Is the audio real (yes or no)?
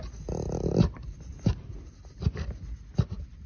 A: yes